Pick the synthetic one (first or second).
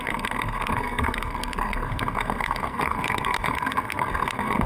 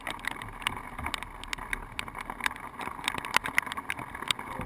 first